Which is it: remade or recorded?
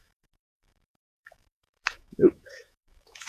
remade